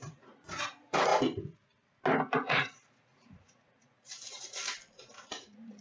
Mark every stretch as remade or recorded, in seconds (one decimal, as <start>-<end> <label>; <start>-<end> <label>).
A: 0.0-1.1 remade; 1.1-2.3 recorded; 2.3-4.6 remade; 4.6-5.2 recorded; 5.2-5.8 remade